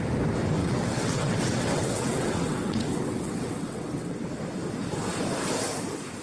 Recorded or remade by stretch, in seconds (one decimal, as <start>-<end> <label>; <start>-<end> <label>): 0.0-0.6 recorded; 0.6-4.3 remade; 4.3-6.2 recorded